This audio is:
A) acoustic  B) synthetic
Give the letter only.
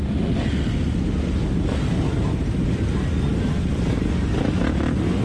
A